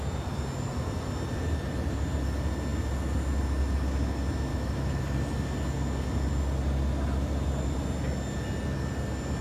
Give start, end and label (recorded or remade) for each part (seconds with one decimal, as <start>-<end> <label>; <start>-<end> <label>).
0.0-4.5 recorded; 4.5-5.0 remade; 5.0-9.4 recorded